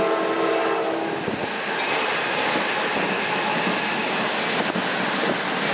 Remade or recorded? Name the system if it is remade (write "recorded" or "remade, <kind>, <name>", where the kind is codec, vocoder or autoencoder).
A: recorded